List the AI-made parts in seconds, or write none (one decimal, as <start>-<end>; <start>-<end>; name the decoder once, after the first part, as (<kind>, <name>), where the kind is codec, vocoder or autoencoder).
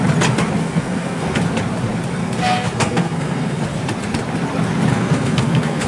0.6-1.4 (codec, SNAC); 2.2-3.6; 4.9-5.9